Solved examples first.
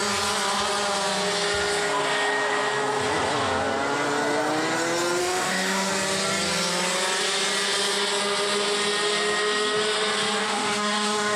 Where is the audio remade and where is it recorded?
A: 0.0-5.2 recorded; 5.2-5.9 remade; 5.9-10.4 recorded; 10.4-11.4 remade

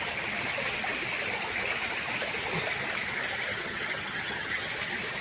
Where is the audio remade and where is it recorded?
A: 0.0-3.5 recorded; 3.5-4.7 remade; 4.7-5.2 recorded

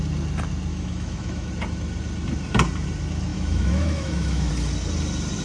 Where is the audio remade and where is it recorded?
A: 0.0-0.7 recorded; 0.7-1.5 remade; 1.5-3.3 recorded; 3.3-4.5 remade; 4.5-5.4 recorded